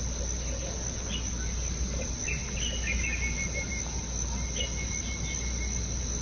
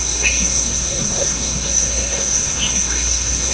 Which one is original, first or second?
first